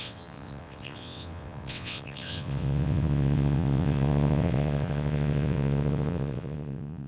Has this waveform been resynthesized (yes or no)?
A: yes